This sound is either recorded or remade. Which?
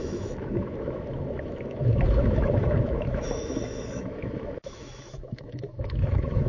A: remade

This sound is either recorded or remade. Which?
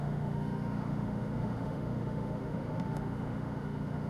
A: remade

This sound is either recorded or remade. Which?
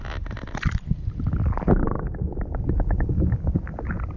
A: recorded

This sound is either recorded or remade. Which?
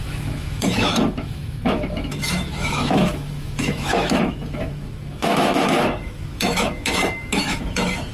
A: remade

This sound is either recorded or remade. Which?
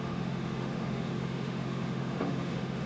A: remade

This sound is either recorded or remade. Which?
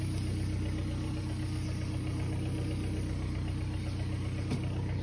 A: recorded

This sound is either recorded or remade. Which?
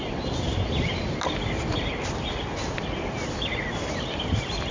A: recorded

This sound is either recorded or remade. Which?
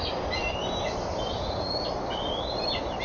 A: recorded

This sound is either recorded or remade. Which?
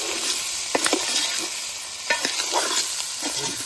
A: recorded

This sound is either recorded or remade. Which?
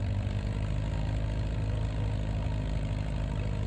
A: recorded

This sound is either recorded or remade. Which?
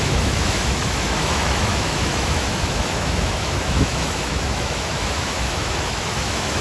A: remade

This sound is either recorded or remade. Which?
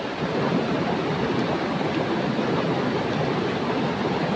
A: recorded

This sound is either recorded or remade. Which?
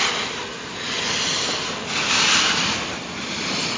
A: recorded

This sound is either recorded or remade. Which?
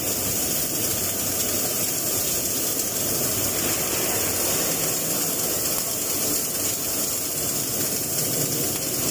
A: recorded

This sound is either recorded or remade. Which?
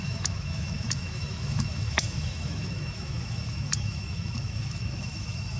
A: remade